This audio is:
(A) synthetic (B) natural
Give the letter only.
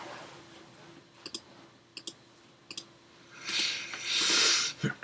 B